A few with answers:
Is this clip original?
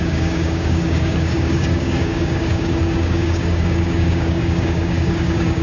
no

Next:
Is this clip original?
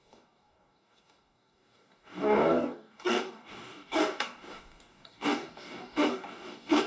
no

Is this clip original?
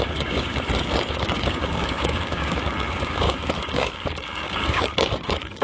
no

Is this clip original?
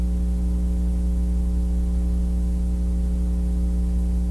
yes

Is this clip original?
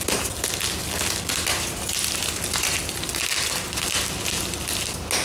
yes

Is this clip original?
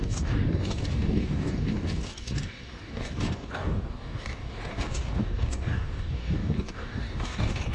no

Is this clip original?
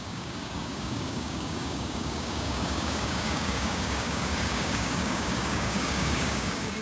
no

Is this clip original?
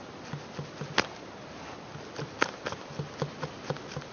yes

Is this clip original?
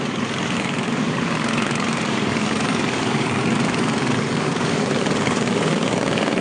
no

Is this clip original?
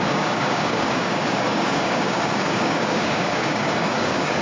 no